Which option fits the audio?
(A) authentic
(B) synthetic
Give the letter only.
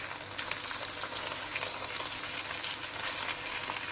A